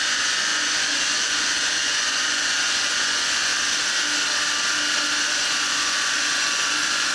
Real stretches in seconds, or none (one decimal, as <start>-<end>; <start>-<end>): 3.5-5.3